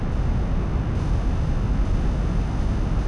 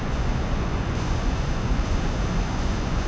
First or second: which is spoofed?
second